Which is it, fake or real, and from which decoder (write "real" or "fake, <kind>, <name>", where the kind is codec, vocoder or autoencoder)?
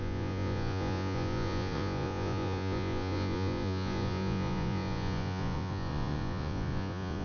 fake, vocoder, Vocos